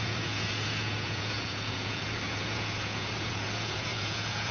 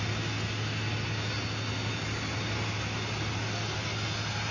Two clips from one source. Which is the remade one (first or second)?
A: first